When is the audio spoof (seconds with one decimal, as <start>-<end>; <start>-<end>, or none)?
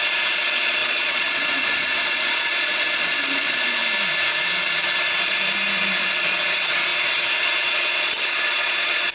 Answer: 0.0-3.8; 6.0-6.9; 7.6-9.1